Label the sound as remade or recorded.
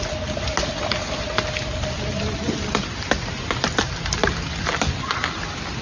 recorded